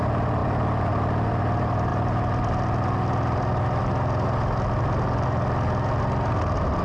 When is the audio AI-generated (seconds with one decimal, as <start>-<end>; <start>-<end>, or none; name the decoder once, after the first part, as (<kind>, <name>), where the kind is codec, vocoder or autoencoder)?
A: none